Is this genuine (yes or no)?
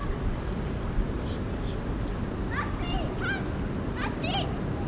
yes